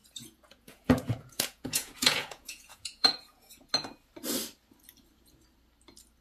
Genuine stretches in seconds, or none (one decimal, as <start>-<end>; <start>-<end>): 3.7-6.2